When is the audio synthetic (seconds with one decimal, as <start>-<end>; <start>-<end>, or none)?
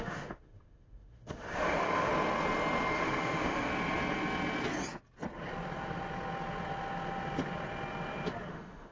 0.0-2.1; 2.9-3.7; 8.5-8.9